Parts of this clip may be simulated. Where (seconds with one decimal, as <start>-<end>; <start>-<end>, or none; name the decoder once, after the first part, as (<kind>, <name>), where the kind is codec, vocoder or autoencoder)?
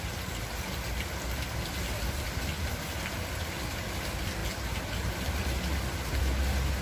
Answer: none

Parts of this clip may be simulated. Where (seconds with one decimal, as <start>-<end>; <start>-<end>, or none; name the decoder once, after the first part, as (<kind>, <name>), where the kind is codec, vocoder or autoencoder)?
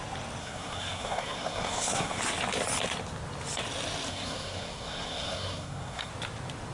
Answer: 0.4-2.2 (codec, SNAC); 4.1-6.1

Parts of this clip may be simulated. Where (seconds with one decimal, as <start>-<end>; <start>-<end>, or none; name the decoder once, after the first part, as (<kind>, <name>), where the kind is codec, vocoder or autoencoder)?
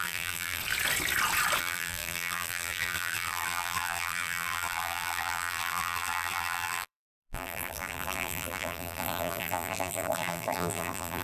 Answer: 0.0-0.6 (vocoder, BigVGAN v2); 1.6-11.2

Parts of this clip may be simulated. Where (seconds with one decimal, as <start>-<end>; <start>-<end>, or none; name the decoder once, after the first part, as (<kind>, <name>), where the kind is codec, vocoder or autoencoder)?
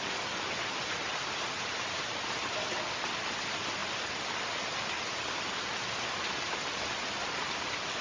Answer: none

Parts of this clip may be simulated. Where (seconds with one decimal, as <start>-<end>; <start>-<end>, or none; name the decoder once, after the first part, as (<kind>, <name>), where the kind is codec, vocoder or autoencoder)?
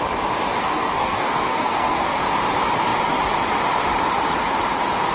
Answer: 0.6-2.2 (codec, SNAC)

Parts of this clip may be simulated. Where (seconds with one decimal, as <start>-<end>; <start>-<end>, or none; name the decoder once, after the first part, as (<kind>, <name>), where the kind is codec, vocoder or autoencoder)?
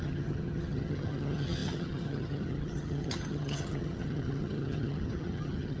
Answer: 0.0-5.8 (vocoder, HiFi-GAN)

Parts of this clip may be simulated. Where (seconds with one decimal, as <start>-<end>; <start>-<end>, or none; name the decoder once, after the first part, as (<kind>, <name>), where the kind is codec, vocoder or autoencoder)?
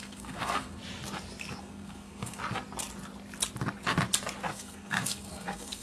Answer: 0.0-0.8 (codec, SNAC); 1.6-2.4; 4.5-5.8